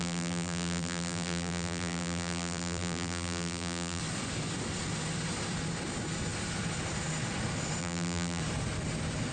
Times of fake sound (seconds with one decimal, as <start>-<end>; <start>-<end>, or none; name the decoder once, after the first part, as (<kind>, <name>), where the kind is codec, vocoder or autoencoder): 0.0-4.0 (vocoder, BigVGAN v2); 7.8-8.4